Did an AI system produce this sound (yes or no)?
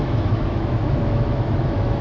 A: yes